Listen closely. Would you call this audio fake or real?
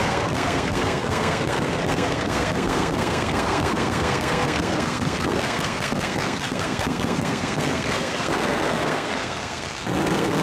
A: fake